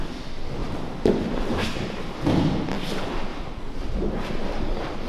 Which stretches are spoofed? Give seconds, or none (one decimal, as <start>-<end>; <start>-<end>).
0.6-2.2; 3.3-5.1

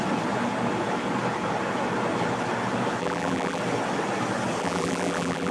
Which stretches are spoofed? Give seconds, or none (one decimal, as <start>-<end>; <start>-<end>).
3.0-3.6; 4.6-5.5

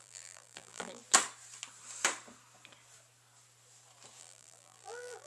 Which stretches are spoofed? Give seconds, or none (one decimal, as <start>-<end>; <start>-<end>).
0.0-1.0; 4.2-5.3

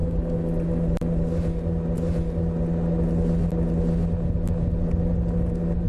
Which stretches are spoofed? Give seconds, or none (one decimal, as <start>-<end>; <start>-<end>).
none

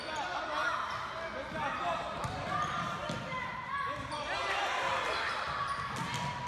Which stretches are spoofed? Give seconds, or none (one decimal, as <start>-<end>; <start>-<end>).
3.5-4.9

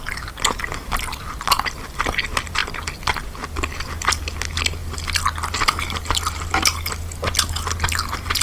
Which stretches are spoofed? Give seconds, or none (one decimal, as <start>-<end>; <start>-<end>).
none

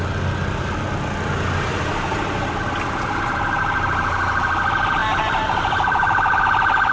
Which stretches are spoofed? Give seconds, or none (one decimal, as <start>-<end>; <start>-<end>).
1.7-2.5; 5.0-6.4

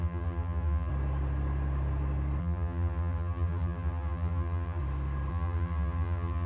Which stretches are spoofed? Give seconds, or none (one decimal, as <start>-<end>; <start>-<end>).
0.0-0.9; 2.4-4.8; 5.3-6.5